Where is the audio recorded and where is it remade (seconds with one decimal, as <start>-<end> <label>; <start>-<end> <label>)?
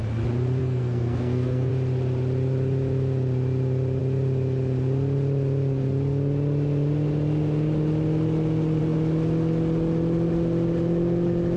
0.0-0.6 recorded; 0.6-1.7 remade; 1.7-11.6 recorded